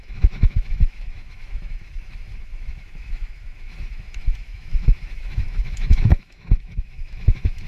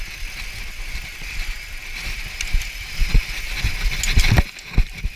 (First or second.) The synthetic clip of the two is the first